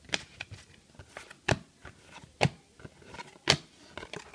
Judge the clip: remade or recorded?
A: recorded